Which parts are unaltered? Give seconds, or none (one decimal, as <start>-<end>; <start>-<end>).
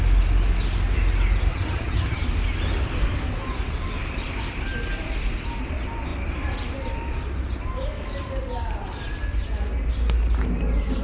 0.0-1.5; 2.2-11.0